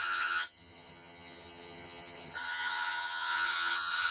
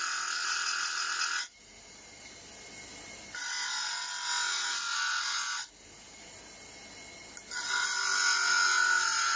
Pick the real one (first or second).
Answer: second